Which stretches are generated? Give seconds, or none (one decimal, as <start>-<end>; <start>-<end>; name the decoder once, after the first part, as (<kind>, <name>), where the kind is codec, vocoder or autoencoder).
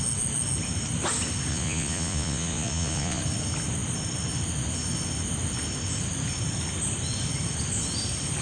1.5-3.2 (vocoder, Vocos)